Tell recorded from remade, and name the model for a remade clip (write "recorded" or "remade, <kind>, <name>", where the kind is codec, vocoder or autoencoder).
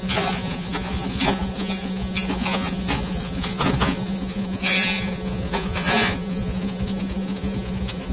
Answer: remade, vocoder, Vocos